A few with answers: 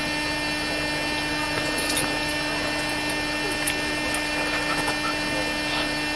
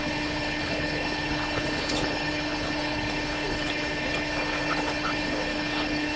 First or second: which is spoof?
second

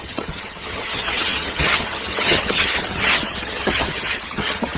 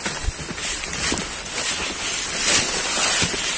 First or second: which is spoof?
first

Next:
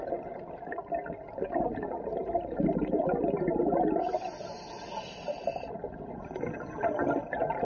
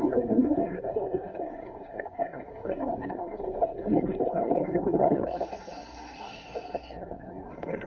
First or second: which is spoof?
second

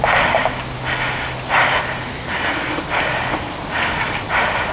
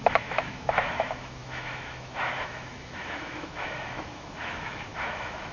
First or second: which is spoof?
second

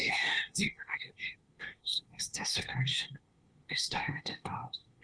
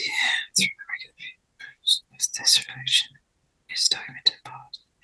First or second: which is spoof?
first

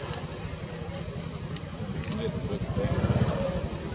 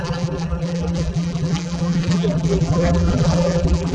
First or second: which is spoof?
second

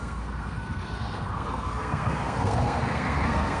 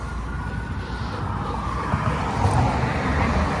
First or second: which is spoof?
first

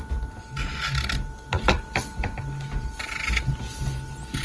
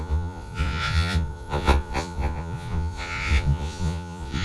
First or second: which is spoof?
second